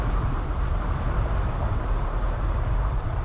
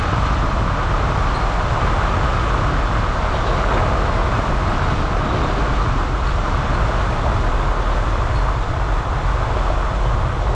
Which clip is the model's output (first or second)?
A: first